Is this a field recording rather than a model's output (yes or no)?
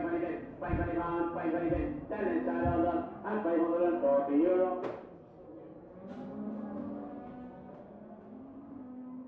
yes